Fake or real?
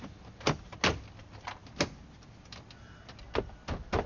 real